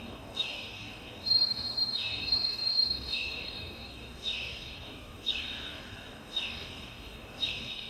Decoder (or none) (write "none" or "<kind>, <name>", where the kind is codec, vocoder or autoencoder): codec, DAC